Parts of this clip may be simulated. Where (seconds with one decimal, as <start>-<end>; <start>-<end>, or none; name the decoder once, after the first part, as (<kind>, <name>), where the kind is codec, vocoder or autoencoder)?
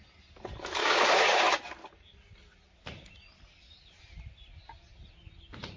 0.8-1.4 (codec, DAC)